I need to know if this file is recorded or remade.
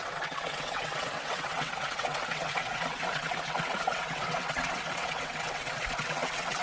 remade